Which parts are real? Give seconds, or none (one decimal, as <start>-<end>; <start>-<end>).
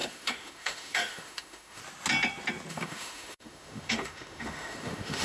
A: 1.8-2.7